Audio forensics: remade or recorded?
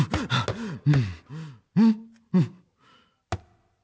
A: recorded